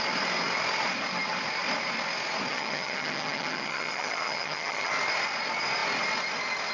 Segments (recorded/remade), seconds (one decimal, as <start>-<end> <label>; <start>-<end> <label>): 0.0-2.5 recorded; 2.5-4.9 remade; 4.9-6.7 recorded